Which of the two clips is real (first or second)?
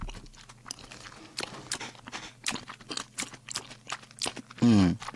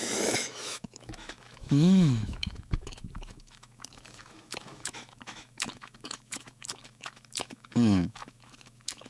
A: first